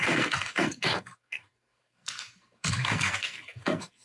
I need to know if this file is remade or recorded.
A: remade